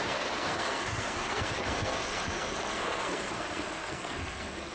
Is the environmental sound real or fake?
fake